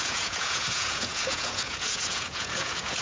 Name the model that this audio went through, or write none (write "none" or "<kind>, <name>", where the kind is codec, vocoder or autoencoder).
vocoder, Vocos